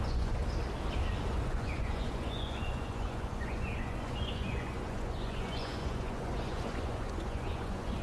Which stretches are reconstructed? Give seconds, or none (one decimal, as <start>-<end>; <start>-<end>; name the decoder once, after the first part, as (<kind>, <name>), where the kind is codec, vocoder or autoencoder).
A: 0.0-0.4 (vocoder, Vocos); 1.3-8.0